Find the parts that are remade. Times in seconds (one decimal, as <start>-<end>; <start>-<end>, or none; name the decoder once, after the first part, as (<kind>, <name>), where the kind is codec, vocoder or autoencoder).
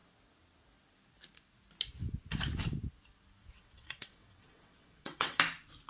3.4-5.4 (vocoder, WaveNeXt)